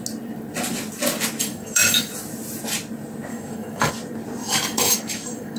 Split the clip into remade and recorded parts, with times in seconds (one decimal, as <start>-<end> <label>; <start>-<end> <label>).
0.0-1.4 recorded; 1.4-2.1 remade; 2.1-3.3 recorded; 3.3-3.9 remade; 3.9-4.4 recorded; 4.4-5.6 remade